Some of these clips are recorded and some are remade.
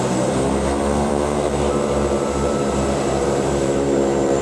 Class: remade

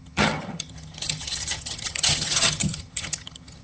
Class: remade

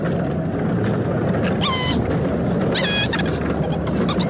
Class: recorded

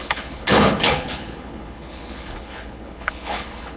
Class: remade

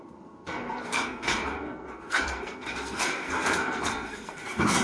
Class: remade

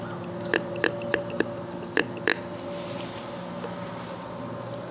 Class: recorded